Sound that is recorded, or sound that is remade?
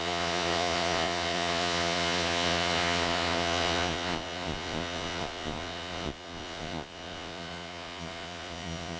remade